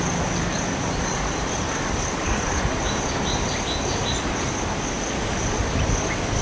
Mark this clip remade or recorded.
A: recorded